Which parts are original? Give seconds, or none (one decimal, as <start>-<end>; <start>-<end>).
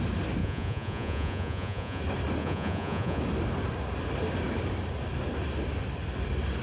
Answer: 0.0-0.4; 2.0-2.4; 3.2-6.6